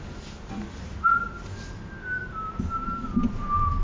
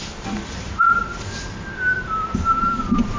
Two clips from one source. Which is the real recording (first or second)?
first